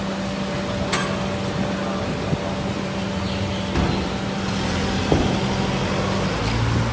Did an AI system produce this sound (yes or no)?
no